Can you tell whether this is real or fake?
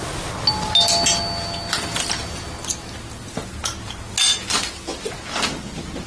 real